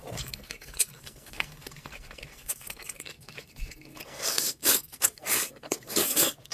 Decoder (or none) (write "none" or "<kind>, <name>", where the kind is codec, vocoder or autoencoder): codec, SNAC